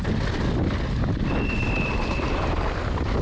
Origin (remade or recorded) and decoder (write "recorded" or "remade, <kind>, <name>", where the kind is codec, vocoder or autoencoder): recorded